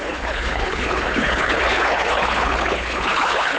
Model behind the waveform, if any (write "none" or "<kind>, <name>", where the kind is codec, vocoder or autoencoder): codec, HILCodec